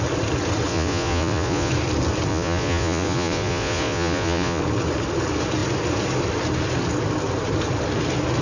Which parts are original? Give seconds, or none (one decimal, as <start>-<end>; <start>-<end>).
0.0-0.7; 1.7-2.3; 4.6-8.4